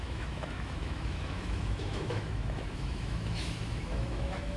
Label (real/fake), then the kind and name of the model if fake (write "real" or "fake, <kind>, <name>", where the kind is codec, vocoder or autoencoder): fake, autoencoder, DAC-VAE